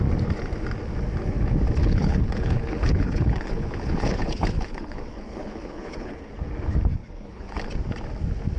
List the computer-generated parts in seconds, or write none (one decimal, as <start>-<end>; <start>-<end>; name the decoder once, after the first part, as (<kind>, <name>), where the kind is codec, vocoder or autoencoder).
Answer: 1.8-6.3 (codec, HILCodec); 7.0-7.7